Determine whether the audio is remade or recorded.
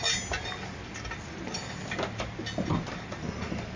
recorded